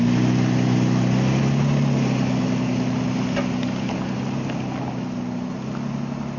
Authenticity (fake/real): real